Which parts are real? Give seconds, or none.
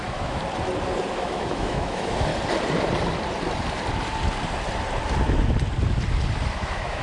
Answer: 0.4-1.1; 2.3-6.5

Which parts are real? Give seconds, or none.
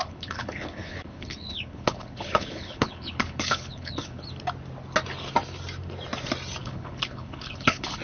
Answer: 4.2-6.6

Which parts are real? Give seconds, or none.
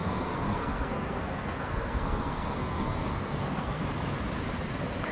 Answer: 3.8-5.1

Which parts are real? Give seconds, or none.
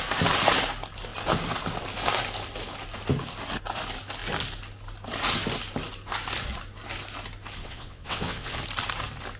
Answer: 0.0-7.6; 8.6-9.4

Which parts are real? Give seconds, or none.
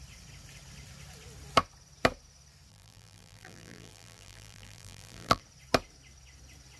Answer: 0.0-2.7; 5.4-6.8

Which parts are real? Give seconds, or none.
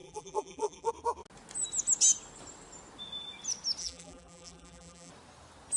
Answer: 0.9-3.8; 5.1-5.8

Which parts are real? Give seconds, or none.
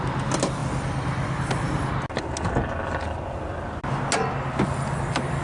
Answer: 0.0-5.4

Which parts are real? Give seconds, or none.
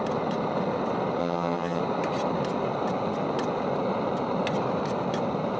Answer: 0.0-1.2; 1.8-5.6